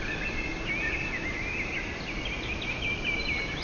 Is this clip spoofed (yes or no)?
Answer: no